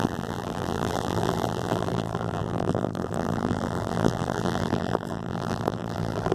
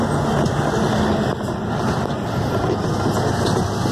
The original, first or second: second